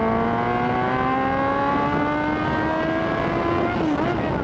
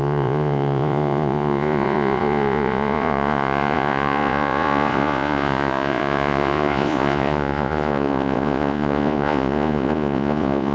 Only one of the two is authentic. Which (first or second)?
first